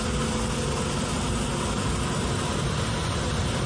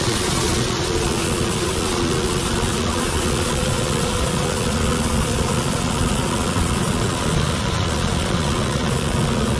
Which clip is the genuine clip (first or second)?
first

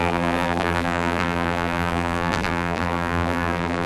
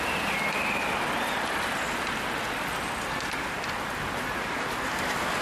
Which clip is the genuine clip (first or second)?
second